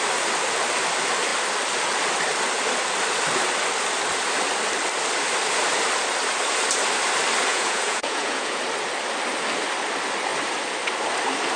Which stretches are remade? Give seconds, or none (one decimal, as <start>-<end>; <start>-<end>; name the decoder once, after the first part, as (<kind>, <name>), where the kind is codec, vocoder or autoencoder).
7.5-8.6 (vocoder, Vocos)